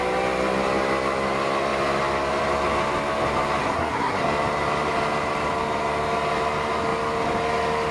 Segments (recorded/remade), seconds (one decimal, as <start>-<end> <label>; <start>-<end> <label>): 0.0-3.6 recorded; 3.6-4.2 remade; 4.2-7.9 recorded